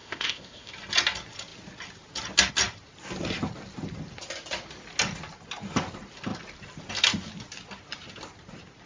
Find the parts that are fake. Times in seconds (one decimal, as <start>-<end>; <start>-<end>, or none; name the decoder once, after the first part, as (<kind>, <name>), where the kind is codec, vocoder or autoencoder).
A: 0.0-0.7 (codec, ZipCodec)